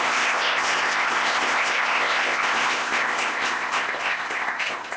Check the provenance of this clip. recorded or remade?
remade